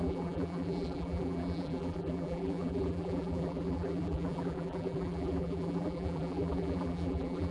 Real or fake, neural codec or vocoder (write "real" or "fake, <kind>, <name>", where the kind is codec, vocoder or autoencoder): fake, vocoder, BigVGAN v2